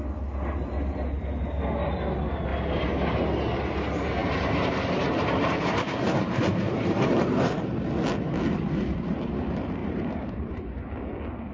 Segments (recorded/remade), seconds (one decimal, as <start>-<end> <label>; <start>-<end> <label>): 0.0-4.2 recorded; 4.2-7.8 remade; 7.8-9.8 recorded; 9.8-10.6 remade; 10.6-11.5 recorded